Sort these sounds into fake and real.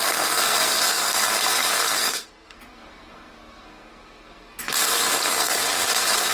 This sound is fake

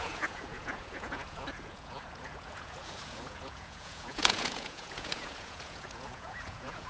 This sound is fake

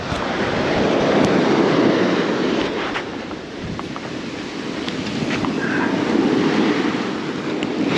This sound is real